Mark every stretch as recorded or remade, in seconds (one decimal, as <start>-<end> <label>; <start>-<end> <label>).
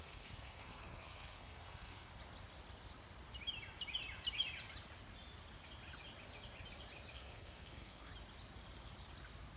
0.0-2.1 remade; 2.1-7.1 recorded; 7.1-8.1 remade; 8.1-9.6 recorded